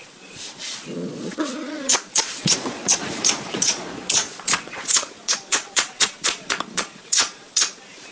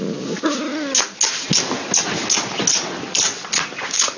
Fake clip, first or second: first